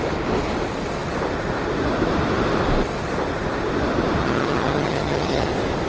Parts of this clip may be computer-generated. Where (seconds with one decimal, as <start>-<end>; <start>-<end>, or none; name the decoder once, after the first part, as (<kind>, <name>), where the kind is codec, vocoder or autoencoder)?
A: 4.2-5.5 (vocoder, HiFi-GAN)